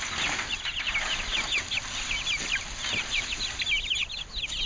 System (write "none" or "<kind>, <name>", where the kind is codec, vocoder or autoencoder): none